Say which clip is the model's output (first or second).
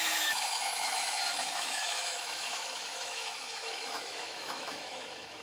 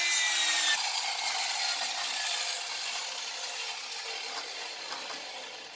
first